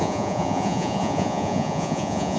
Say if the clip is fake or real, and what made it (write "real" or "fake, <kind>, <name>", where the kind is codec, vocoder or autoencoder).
fake, vocoder, Vocos